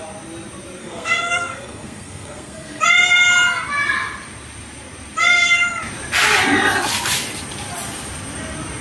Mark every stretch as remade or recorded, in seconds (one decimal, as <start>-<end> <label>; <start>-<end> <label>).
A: 0.0-0.8 recorded; 0.8-2.8 remade; 2.8-8.8 recorded